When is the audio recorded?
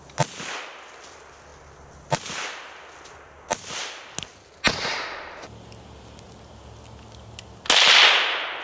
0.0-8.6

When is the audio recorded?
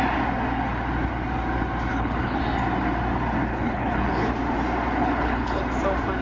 0.0-1.9; 2.4-3.5; 4.3-5.0; 5.6-6.2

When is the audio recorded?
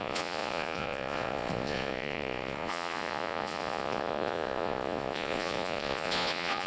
none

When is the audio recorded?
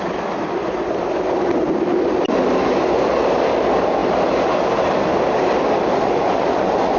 0.0-5.9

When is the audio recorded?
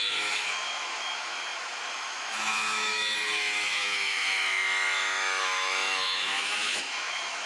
none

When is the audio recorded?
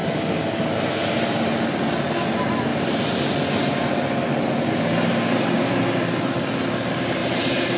0.0-7.8